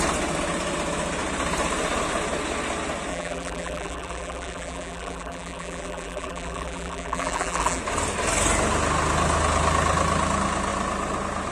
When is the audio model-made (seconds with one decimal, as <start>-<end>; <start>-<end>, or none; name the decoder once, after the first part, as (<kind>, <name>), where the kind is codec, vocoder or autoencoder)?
3.1-7.8 (vocoder, BigVGAN v2)